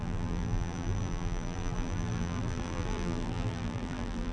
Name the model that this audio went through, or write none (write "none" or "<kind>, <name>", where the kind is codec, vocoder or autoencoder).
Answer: vocoder, BigVGAN v2